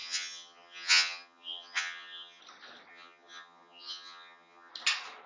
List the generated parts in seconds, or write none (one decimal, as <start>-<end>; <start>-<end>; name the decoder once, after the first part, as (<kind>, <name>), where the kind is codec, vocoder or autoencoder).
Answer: 0.0-2.4 (vocoder, HiFi-GAN); 2.9-4.7